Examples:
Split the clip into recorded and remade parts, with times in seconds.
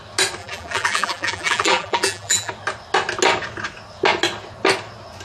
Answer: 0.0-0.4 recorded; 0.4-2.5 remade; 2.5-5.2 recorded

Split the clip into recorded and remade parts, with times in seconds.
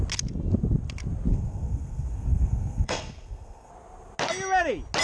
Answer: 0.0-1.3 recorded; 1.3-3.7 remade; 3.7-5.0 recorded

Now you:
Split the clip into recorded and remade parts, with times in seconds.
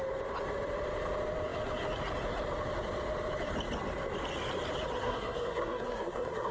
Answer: 0.0-5.0 recorded; 5.0-6.5 remade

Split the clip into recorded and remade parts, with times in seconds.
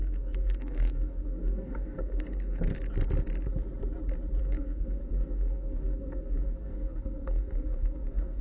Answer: 0.0-2.7 remade; 2.7-4.4 recorded; 4.4-8.4 remade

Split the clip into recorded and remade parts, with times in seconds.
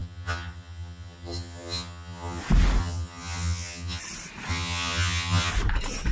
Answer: 0.0-2.4 remade; 2.4-2.8 recorded; 2.8-4.0 remade; 4.0-4.5 recorded; 4.5-5.5 remade; 5.5-6.1 recorded